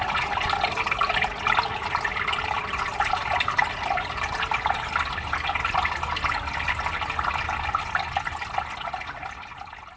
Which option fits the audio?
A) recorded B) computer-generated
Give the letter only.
A